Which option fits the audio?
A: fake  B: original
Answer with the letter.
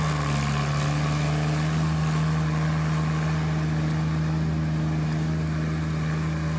B